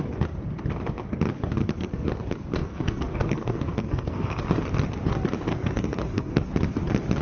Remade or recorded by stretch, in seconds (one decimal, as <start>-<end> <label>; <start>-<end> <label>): 0.0-1.6 recorded; 1.6-2.2 remade; 2.2-2.6 recorded; 2.6-4.4 remade; 4.4-5.5 recorded; 5.5-6.5 remade; 6.5-7.2 recorded